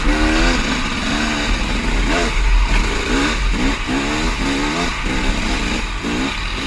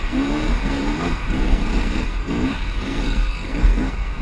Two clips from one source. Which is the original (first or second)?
first